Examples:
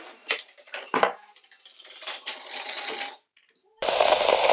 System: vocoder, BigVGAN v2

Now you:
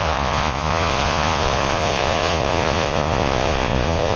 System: vocoder, Vocos